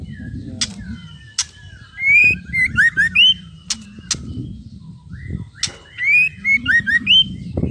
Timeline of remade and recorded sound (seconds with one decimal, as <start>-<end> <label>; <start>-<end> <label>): 0.0-7.7 recorded